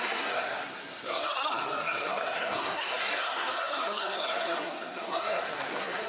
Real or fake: fake